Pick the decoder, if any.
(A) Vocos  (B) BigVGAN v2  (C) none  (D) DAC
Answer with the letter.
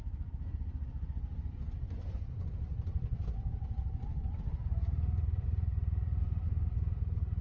C